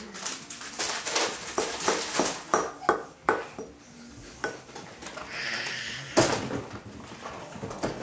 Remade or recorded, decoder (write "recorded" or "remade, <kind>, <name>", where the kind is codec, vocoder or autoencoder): recorded